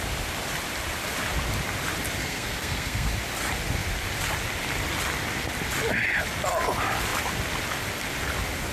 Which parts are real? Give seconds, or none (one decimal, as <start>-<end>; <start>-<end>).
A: 0.0-2.2; 3.1-8.7